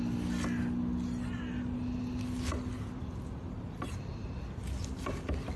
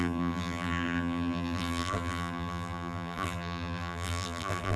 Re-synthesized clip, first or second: second